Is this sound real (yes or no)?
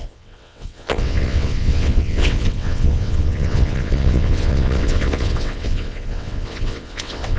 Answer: no